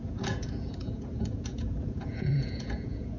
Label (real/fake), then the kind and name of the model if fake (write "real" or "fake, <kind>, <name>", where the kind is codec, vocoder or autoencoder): fake, vocoder, Vocos